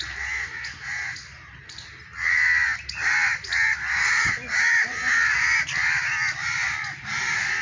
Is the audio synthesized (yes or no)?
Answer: no